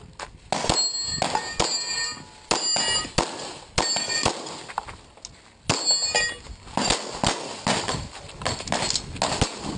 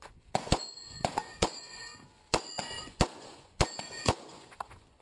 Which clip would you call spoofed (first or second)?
second